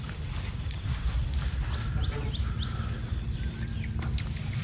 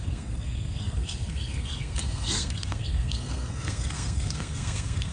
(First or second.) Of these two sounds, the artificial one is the second